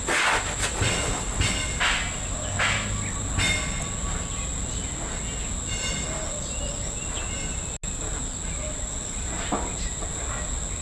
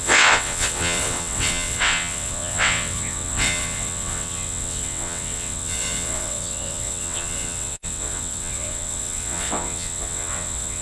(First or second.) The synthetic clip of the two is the second